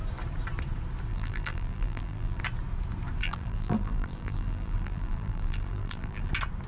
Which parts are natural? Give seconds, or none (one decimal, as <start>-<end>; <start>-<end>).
0.0-1.1; 2.4-3.2; 6.3-6.7